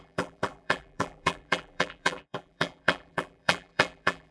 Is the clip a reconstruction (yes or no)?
yes